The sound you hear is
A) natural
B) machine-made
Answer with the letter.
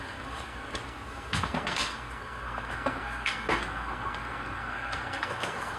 B